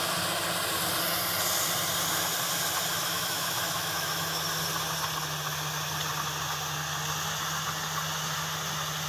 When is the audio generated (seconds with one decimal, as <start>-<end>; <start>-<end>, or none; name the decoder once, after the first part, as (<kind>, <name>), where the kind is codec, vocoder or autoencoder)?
2.9-4.4 (autoencoder, DAC-VAE)